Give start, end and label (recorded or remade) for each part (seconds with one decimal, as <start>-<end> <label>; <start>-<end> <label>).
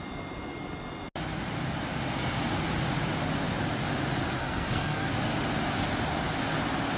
0.0-4.4 recorded; 4.4-5.1 remade; 5.1-7.0 recorded